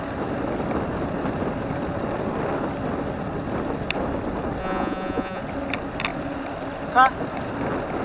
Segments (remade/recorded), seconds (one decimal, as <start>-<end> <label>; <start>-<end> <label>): 0.0-4.6 recorded; 4.6-5.4 remade; 5.4-8.0 recorded